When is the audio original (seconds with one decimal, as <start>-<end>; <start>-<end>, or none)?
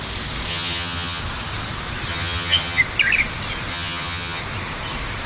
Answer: 0.0-0.5; 1.2-2.1; 2.8-3.7; 4.4-5.3